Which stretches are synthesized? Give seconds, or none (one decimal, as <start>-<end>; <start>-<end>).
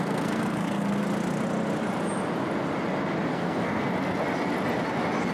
0.0-1.0; 3.3-3.8